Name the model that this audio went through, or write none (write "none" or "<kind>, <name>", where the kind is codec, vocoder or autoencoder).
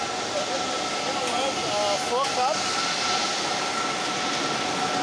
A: none